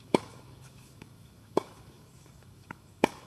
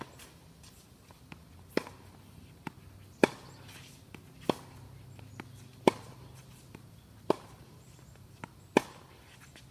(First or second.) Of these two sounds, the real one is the second